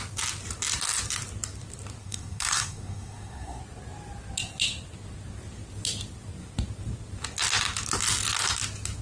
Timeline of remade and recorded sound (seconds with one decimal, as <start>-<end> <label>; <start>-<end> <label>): 0.0-2.0 recorded; 2.0-3.6 remade; 3.6-9.0 recorded